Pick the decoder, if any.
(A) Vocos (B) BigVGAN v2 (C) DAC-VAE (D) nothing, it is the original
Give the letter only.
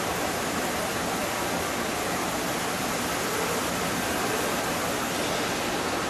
D